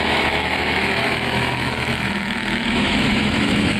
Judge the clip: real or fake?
fake